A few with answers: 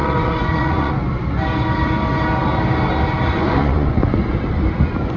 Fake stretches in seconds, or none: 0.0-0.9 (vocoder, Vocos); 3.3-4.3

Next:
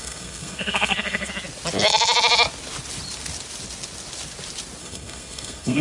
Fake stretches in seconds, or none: 0.0-1.3 (codec, SNAC); 4.8-5.8

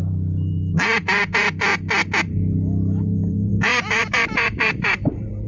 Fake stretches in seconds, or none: 0.0-1.7 (vocoder, BigVGAN v2); 2.2-5.5

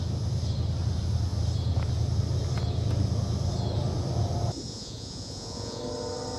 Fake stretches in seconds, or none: 4.7-5.8 (vocoder, Vocos)

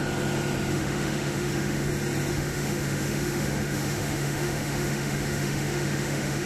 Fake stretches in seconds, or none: 0.7-1.9 (autoencoder, DAC-VAE); 2.3-6.5

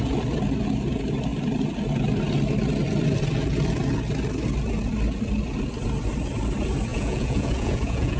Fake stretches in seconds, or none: 6.9-8.2 (vocoder, Vocos)